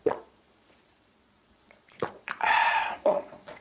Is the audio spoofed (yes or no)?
yes